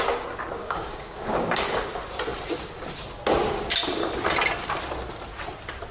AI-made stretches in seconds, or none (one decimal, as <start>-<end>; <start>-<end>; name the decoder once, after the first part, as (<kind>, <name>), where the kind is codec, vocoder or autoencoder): 0.6-1.6 (codec, DAC)